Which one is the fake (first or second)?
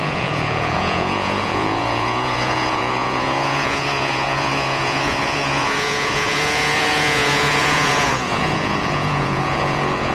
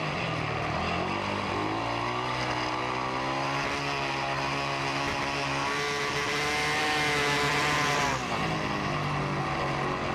first